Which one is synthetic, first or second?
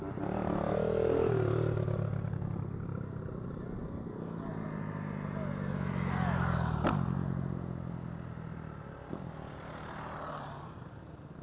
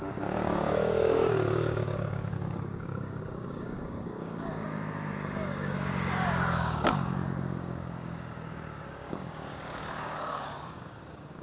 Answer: second